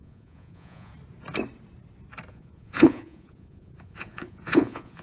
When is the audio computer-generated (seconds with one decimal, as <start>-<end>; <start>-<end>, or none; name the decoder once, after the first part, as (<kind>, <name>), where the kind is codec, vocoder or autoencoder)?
0.0-0.9 (vocoder, Vocos); 2.3-5.0